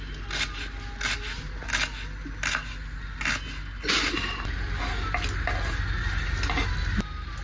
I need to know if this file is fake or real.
real